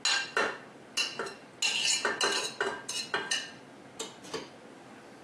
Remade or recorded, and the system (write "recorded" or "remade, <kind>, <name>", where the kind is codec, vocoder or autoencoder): recorded